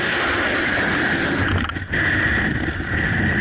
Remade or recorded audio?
recorded